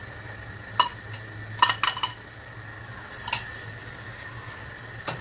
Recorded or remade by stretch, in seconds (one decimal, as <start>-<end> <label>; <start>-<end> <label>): 0.0-3.8 recorded; 3.8-4.6 remade; 4.6-5.2 recorded